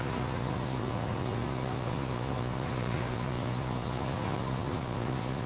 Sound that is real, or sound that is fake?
fake